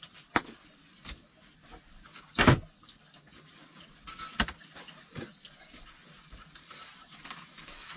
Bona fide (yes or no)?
yes